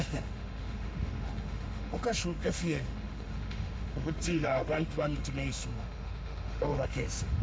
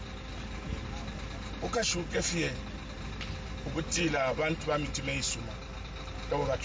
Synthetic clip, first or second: first